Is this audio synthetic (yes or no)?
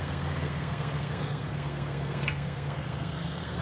yes